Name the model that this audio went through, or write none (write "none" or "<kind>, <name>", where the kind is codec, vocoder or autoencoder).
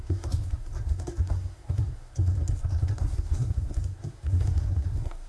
codec, SNAC